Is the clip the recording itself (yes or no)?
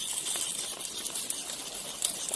yes